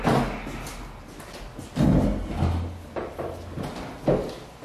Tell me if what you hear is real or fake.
real